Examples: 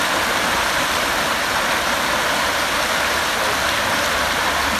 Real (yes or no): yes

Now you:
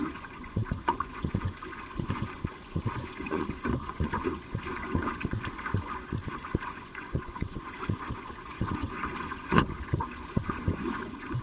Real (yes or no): no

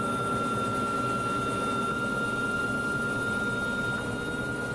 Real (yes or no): yes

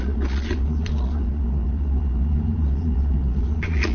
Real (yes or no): no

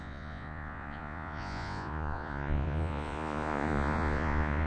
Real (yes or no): no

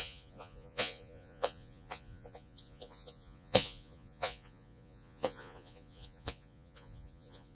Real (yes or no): no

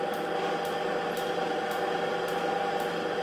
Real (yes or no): yes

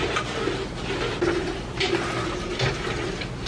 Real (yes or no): yes